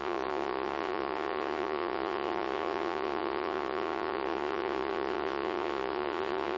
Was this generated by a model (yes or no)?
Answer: yes